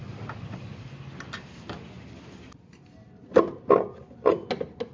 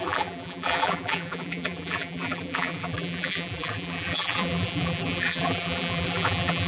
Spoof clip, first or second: second